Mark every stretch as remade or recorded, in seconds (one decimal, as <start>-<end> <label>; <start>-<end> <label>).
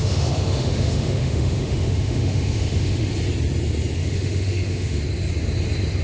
0.0-3.1 remade; 3.1-4.0 recorded; 4.0-5.0 remade; 5.0-6.0 recorded